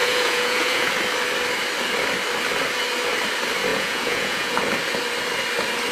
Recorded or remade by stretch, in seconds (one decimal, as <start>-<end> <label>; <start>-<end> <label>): 0.0-0.9 remade; 0.9-3.7 recorded; 3.7-4.6 remade; 4.6-5.9 recorded